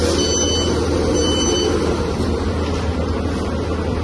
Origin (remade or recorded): recorded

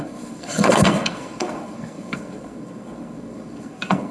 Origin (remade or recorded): remade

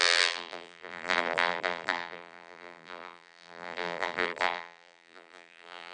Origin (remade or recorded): remade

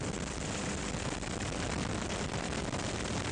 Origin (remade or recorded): recorded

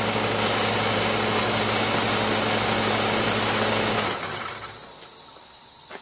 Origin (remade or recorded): recorded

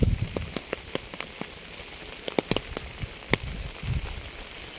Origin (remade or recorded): recorded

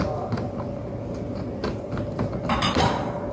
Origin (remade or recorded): recorded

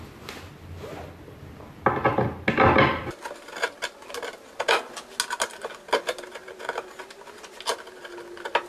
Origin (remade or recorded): recorded